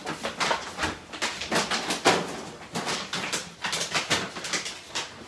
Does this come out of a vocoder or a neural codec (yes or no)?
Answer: no